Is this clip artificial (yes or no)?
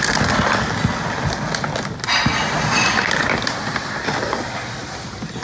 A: no